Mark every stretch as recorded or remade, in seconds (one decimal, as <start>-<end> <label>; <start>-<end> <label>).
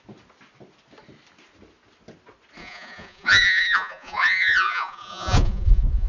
0.0-2.6 recorded; 2.6-6.1 remade